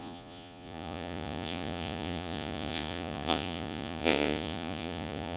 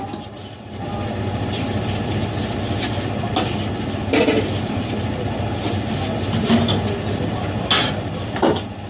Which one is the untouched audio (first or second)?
second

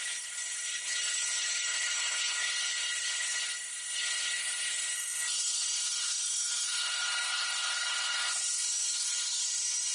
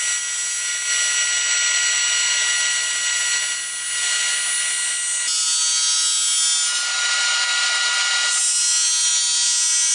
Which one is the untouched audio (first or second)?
second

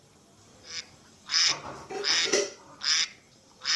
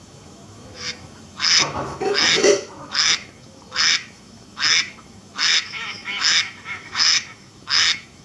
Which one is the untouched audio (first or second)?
first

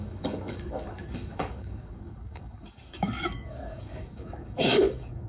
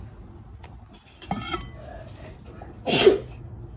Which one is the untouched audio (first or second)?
second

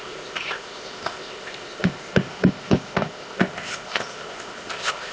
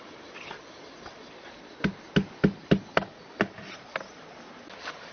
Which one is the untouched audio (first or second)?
second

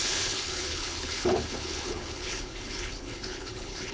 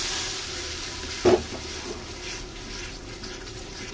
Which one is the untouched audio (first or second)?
second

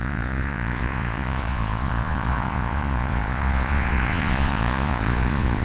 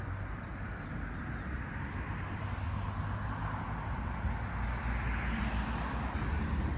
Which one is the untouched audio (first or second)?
second